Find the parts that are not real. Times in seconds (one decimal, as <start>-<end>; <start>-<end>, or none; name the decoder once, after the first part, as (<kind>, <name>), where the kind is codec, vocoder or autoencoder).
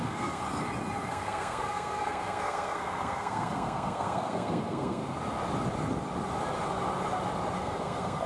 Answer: 0.0-0.4 (codec, SNAC); 1.1-5.0; 7.6-8.3